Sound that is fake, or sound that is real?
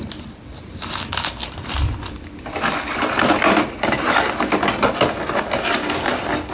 real